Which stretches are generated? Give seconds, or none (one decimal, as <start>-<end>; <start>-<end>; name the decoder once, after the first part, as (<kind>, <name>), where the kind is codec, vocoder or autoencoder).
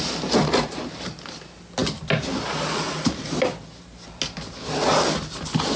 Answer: none